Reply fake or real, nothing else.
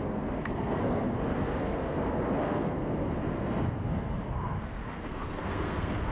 fake